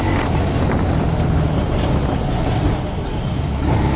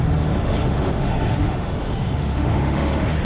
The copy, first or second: second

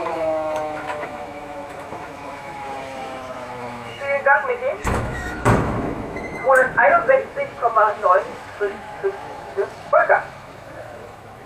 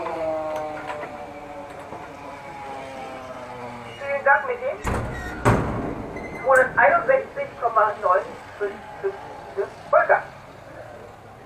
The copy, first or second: first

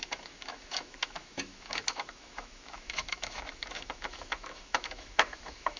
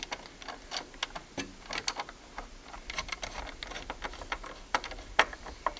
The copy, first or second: first